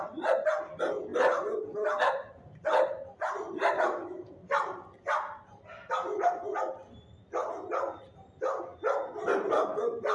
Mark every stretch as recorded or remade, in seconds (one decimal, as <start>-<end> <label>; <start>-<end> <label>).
0.0-10.1 recorded

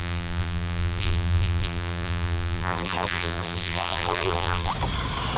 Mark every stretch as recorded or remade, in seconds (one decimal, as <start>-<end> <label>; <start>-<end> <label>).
0.0-4.7 remade; 4.7-5.4 recorded

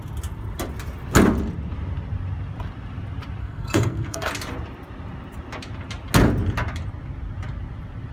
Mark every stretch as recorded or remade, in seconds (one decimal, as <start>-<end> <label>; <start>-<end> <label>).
0.0-3.4 recorded; 3.4-4.3 remade; 4.3-8.1 recorded